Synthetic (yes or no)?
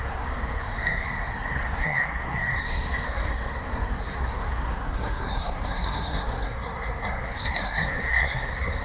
yes